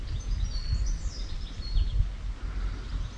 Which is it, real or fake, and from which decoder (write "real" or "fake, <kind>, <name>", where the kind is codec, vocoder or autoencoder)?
real